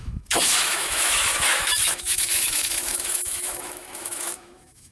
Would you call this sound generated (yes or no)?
yes